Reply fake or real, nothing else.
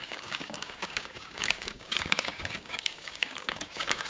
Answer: fake